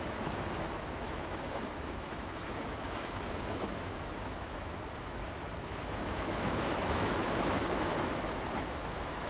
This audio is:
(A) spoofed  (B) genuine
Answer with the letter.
A